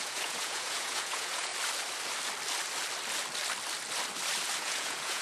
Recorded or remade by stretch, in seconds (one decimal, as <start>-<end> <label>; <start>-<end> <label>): 0.0-1.5 remade; 1.5-4.6 recorded; 4.6-5.2 remade